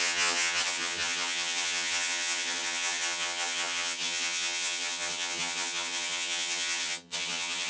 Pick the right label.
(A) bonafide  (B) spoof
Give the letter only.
B